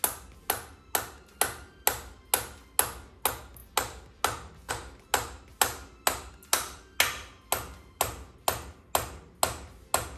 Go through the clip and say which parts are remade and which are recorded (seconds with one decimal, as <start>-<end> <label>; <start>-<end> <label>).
0.0-10.2 recorded